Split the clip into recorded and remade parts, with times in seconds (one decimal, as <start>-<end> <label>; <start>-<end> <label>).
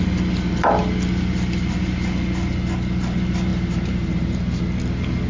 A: 0.0-3.5 recorded; 3.5-4.8 remade; 4.8-5.3 recorded